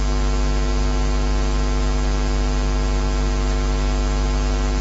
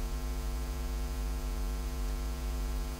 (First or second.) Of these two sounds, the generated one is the second